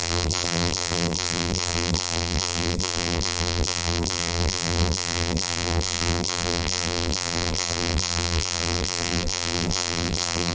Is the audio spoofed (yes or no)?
yes